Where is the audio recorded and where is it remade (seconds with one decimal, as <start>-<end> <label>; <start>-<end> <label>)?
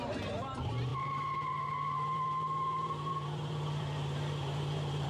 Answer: 0.0-5.1 remade